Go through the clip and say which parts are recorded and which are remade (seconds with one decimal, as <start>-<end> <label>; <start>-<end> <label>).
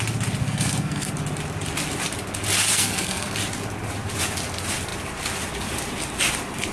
0.0-0.4 recorded; 0.4-1.1 remade; 1.1-2.7 recorded; 2.7-3.3 remade; 3.3-6.7 recorded